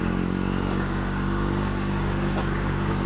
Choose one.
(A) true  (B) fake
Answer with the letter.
B